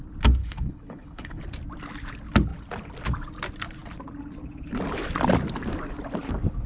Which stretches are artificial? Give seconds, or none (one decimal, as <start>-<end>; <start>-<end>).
0.4-1.4